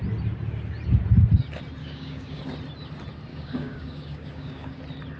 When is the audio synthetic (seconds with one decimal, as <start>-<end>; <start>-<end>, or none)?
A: 1.8-2.4; 3.3-4.8